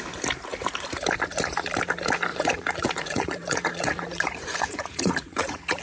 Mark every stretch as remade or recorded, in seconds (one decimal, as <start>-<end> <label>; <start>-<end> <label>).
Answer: 0.0-2.3 recorded; 2.3-5.8 remade